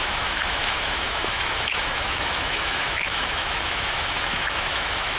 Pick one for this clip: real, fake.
fake